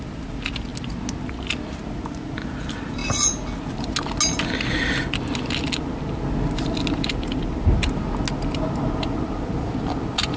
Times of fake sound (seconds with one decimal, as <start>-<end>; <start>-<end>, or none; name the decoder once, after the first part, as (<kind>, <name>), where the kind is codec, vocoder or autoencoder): none